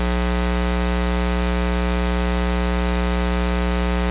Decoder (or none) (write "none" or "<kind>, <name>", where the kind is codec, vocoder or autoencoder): none